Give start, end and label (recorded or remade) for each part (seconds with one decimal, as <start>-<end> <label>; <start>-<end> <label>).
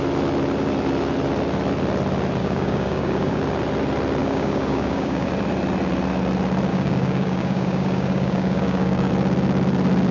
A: 0.0-2.4 recorded; 2.4-3.4 remade; 3.4-4.2 recorded; 4.2-5.3 remade; 5.3-6.7 recorded; 6.7-9.1 remade; 9.1-10.1 recorded